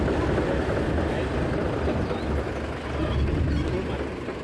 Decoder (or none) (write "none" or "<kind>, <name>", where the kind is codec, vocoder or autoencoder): none